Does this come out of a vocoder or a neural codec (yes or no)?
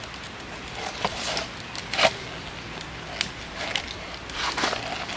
no